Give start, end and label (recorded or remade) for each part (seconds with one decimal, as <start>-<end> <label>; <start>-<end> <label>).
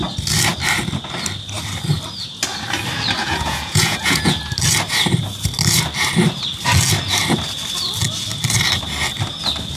0.0-3.2 recorded; 3.2-4.4 remade; 4.4-9.8 recorded